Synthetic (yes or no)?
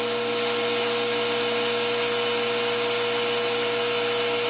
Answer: no